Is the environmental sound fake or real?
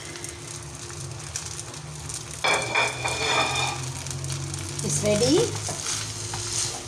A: real